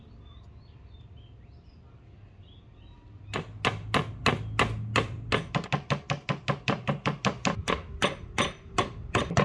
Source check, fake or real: real